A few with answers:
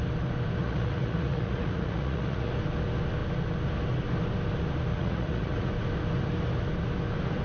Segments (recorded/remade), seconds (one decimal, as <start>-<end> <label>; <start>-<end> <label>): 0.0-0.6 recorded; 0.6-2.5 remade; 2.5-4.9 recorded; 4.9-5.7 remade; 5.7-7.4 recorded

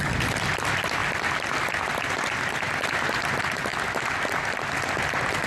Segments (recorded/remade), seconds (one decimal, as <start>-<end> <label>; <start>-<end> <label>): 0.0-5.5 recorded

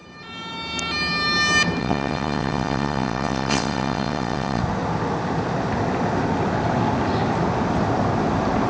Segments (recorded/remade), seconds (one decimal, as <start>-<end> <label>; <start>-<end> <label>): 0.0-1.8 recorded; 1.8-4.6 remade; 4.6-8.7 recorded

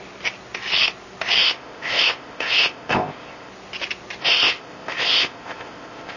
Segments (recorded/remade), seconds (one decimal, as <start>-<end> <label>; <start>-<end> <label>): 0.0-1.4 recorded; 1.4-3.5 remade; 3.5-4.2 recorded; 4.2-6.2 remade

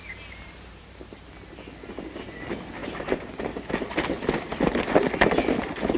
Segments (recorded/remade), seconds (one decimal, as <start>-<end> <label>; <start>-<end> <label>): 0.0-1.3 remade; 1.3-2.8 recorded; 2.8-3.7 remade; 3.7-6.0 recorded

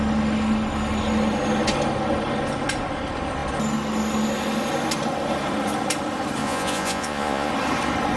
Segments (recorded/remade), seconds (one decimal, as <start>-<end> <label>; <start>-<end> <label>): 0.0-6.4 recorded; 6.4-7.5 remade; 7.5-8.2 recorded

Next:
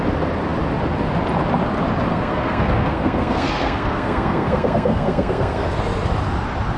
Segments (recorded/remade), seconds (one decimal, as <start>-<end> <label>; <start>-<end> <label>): 0.0-2.1 recorded; 2.1-5.8 remade; 5.8-6.8 recorded

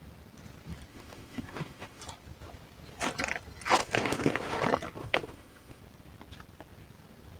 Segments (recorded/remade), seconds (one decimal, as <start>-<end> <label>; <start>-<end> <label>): 0.0-0.9 recorded; 0.9-2.0 remade; 2.0-3.8 recorded; 3.8-4.6 remade; 4.6-5.0 recorded; 5.0-5.8 remade; 5.8-7.4 recorded